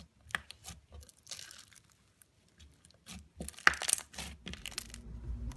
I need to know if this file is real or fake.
real